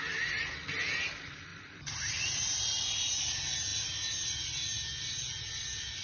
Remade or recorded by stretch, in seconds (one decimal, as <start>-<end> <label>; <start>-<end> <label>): 0.0-1.5 recorded; 1.5-2.4 remade; 2.4-6.0 recorded